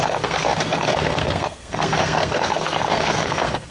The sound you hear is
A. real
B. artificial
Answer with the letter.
B